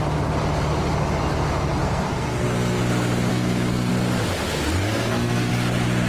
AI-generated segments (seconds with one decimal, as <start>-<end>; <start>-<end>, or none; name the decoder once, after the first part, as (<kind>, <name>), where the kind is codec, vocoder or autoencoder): 1.8-2.8 (codec, SNAC); 3.3-3.9; 4.8-5.5